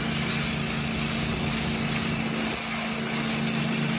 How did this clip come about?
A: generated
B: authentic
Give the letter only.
B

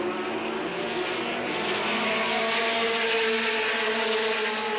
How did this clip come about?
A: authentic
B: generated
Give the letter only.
A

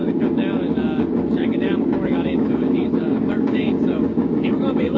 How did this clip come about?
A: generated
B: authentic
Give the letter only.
A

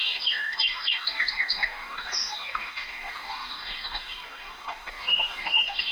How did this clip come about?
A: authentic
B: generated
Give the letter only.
B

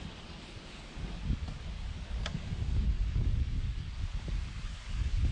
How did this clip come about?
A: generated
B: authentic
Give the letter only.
A